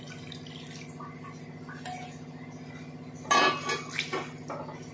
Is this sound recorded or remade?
recorded